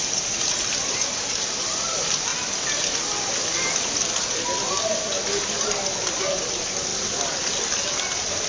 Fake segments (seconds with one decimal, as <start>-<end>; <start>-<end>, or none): none